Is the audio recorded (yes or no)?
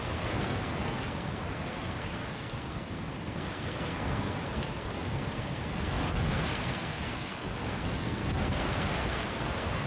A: no